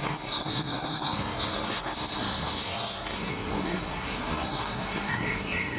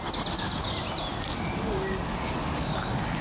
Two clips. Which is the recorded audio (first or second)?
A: second